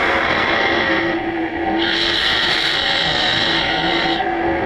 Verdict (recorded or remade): remade